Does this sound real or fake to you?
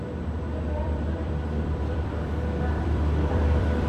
fake